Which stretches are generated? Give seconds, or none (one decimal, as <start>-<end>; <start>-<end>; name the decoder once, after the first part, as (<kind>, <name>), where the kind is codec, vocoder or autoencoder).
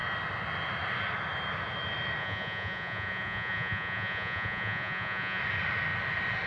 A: 2.2-5.4 (vocoder, Vocos)